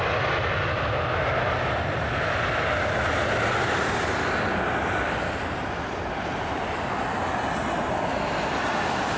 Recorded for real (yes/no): yes